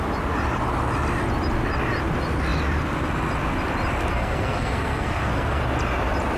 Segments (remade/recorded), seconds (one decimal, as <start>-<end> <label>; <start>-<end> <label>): 0.0-4.1 recorded; 4.1-5.6 remade; 5.6-6.4 recorded